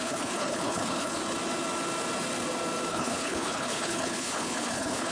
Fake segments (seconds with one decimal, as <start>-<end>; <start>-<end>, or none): 0.0-1.2; 2.9-5.1